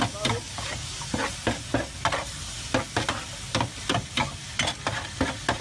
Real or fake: real